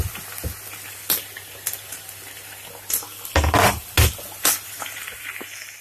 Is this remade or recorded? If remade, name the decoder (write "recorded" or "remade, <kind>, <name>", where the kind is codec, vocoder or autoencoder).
recorded